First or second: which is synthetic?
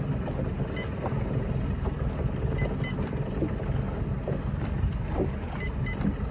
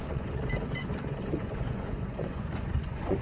second